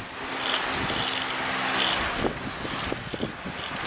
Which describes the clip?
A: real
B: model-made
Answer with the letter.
A